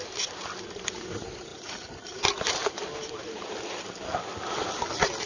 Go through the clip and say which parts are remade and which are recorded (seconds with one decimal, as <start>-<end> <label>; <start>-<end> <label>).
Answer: 0.0-5.3 recorded